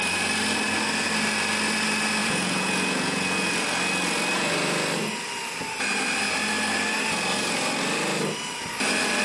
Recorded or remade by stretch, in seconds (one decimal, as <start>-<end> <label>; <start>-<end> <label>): 0.0-2.2 recorded; 2.2-3.5 remade; 3.5-9.2 recorded